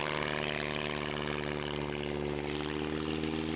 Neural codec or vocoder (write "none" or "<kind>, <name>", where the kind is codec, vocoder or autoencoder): none